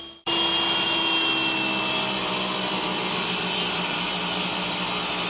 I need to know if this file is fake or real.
real